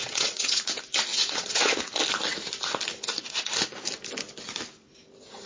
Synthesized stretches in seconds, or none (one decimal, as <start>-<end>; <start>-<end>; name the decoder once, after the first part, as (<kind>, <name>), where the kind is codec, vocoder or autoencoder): 0.0-0.6 (vocoder, WaveNeXt); 1.1-1.9